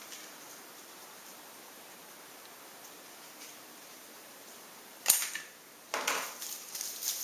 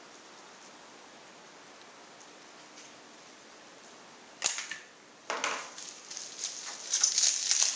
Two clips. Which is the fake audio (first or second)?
first